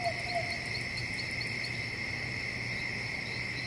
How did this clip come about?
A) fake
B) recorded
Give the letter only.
B